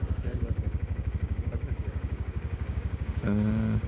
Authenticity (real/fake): fake